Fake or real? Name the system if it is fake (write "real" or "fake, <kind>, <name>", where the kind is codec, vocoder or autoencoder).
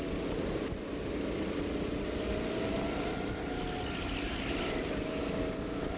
real